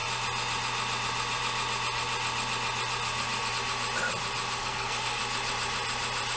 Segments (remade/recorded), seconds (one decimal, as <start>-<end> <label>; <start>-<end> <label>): 0.0-4.6 recorded; 4.6-5.2 remade; 5.2-6.4 recorded